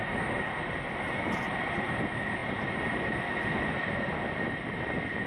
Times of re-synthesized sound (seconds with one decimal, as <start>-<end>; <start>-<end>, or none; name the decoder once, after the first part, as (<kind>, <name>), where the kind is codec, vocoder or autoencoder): none